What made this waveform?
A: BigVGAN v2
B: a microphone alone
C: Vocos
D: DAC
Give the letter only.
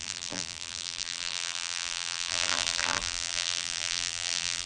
A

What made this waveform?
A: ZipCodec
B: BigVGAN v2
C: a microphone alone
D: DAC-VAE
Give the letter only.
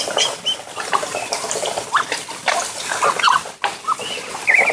C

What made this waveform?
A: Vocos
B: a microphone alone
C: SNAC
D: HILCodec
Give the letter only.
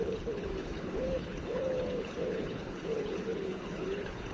D